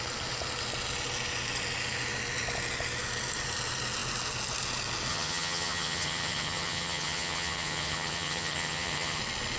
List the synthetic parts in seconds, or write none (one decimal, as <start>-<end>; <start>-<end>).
5.1-9.2